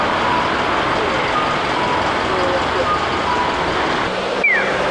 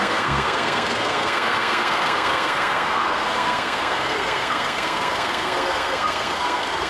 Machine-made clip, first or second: second